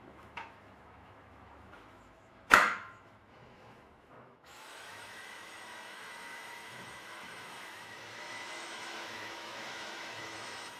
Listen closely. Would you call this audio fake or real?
fake